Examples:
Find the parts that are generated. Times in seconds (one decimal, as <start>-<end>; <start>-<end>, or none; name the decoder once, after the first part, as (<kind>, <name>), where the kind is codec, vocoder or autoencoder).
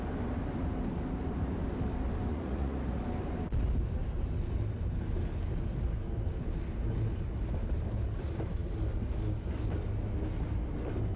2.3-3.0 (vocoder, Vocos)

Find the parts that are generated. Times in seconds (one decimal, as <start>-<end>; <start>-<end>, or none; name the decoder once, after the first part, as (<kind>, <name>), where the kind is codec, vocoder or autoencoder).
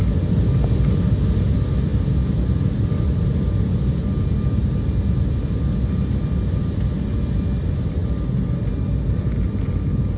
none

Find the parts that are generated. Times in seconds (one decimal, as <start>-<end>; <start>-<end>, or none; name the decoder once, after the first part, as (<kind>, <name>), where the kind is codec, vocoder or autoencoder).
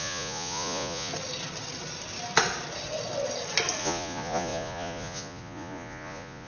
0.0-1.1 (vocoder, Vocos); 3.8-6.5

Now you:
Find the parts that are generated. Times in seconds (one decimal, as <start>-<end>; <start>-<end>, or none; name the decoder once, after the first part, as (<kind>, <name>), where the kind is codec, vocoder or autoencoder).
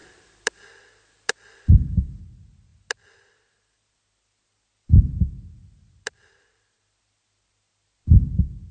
none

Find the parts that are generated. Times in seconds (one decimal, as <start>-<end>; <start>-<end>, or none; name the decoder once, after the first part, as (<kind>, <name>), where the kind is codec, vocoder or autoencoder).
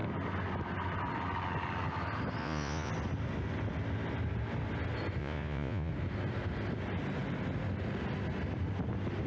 2.4-2.9 (vocoder, Vocos); 5.2-5.9